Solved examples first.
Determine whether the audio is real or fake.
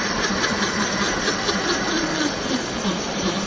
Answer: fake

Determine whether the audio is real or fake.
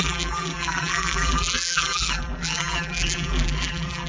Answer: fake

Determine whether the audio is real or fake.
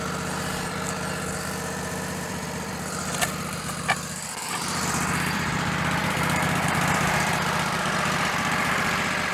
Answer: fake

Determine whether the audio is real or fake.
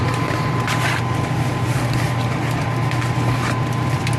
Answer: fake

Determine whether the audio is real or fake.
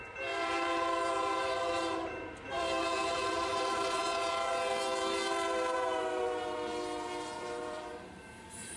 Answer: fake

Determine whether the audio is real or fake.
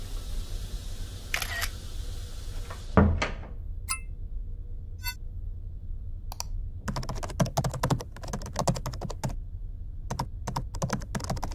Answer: real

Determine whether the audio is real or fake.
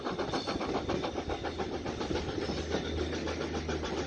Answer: real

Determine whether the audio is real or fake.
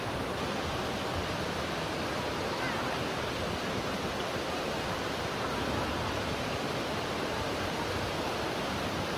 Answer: real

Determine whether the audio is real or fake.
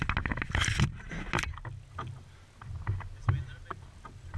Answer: real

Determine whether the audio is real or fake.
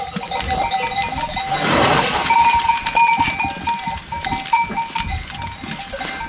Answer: real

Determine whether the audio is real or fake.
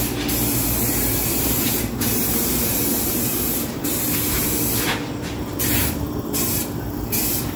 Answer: fake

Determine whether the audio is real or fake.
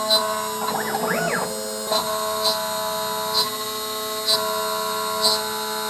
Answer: real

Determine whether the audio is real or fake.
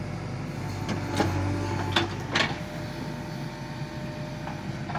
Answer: real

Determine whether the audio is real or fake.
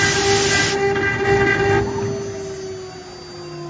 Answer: real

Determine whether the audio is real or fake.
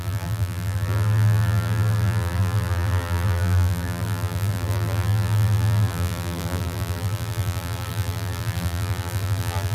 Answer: fake